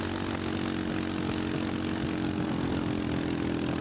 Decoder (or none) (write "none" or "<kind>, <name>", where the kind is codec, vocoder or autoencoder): none